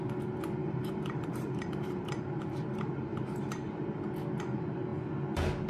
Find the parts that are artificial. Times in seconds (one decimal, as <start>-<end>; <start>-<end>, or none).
0.6-2.2; 2.7-3.8